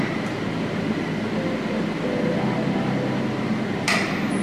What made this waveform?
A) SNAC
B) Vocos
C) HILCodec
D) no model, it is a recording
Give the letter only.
D